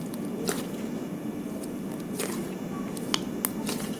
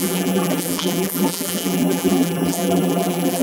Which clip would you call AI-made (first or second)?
second